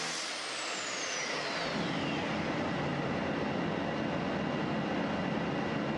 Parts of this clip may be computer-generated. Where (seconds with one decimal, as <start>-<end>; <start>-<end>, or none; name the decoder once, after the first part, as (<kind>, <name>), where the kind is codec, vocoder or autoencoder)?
none

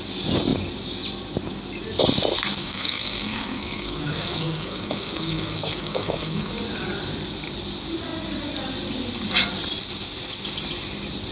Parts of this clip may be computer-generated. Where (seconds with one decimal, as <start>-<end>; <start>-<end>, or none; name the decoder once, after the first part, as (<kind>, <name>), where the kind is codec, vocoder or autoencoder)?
2.6-6.5 (codec, SNAC)

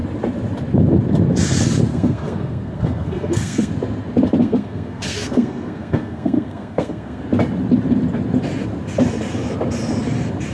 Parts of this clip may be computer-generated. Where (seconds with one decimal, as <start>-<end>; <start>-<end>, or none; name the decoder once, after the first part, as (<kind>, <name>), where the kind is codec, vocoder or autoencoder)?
1.9-3.7 (codec, SNAC); 4.4-7.2

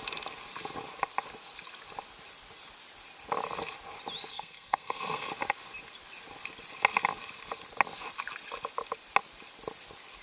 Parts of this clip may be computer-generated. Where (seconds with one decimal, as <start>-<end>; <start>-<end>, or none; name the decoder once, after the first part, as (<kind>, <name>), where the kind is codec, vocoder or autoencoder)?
4.3-5.3 (codec, SNAC)

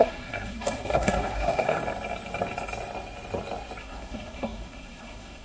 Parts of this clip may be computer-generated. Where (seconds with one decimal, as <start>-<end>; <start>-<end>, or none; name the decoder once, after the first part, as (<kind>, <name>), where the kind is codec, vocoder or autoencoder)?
0.0-1.8 (codec, SNAC); 3.8-5.4

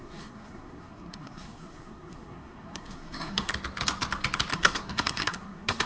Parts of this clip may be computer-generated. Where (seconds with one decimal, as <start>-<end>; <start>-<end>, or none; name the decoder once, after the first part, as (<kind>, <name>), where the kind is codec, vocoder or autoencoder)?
0.0-3.5 (codec, SNAC); 4.5-5.9

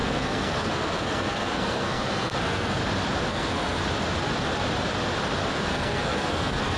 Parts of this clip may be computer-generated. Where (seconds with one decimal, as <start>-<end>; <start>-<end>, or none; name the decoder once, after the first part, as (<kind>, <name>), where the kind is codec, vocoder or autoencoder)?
0.0-2.8 (codec, SNAC); 3.3-3.8; 5.5-6.8